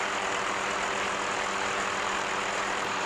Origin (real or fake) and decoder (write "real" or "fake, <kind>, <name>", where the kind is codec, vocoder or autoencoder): fake, vocoder, BigVGAN v2